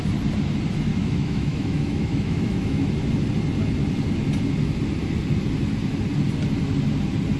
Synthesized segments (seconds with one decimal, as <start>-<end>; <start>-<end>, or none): 0.9-2.9